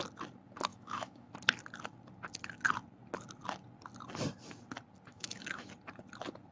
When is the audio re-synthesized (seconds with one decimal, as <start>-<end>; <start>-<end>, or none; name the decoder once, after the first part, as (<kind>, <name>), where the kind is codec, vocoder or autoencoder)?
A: 0.7-1.3 (autoencoder, DAC-VAE); 5.1-5.7